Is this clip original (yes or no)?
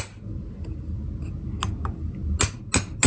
yes